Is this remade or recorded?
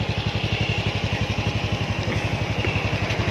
recorded